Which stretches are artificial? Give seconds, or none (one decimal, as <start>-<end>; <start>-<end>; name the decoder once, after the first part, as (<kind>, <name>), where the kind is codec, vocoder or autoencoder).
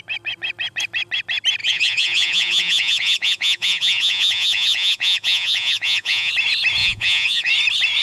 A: 1.6-6.3 (vocoder, Vocos); 6.8-7.5